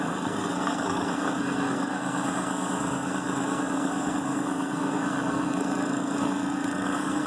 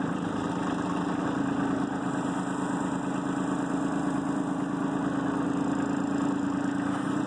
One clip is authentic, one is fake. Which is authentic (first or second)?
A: second